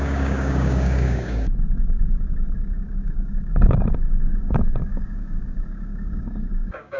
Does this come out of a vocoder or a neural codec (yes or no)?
yes